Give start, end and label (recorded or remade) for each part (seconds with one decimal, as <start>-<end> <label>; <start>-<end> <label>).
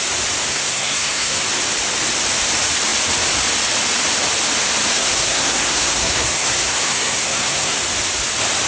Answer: 0.0-0.5 recorded; 0.5-1.4 remade; 1.4-4.9 recorded; 4.9-7.8 remade; 7.8-8.7 recorded